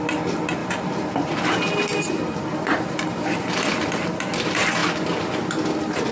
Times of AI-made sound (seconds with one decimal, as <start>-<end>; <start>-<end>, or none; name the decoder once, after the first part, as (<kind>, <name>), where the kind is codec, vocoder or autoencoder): 0.6-1.3 (vocoder, BigVGAN v2); 1.9-4.3